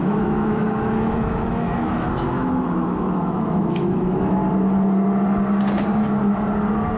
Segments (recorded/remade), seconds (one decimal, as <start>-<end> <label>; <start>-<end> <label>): 0.0-4.4 remade; 4.4-7.0 recorded